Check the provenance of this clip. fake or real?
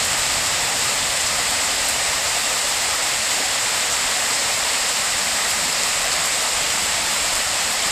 fake